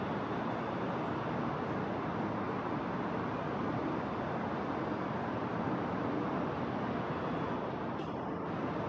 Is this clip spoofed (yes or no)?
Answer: no